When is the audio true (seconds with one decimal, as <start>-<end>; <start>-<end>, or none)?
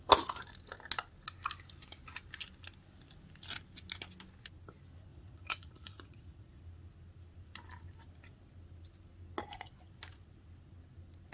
0.0-5.1; 6.6-11.3